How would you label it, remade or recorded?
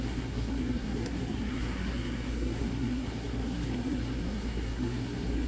remade